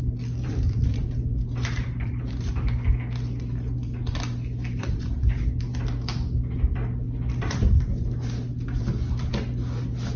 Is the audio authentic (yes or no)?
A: yes